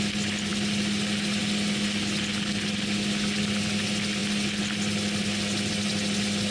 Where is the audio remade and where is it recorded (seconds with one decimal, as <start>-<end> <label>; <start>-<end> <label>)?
0.0-6.5 recorded